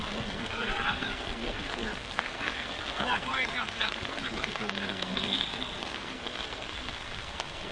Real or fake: fake